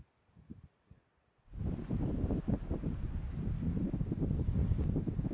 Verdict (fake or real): real